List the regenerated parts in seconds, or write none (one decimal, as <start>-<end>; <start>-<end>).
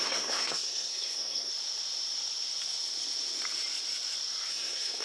0.0-1.5; 4.5-5.0